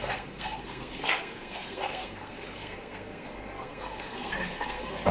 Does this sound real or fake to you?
fake